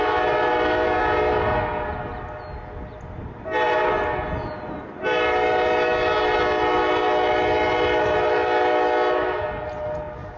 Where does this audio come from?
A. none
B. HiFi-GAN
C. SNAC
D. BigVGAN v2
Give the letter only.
A